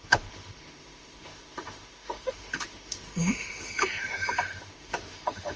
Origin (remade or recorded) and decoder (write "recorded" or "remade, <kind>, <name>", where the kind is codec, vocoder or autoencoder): remade, autoencoder, DAC-VAE